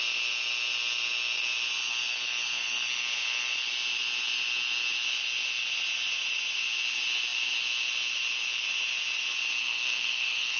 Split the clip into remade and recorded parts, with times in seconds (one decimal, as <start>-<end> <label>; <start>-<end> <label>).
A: 0.0-9.6 recorded; 9.6-10.6 remade